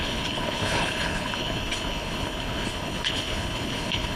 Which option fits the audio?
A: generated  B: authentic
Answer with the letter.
A